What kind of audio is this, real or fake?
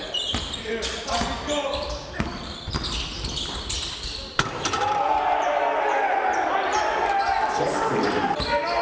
real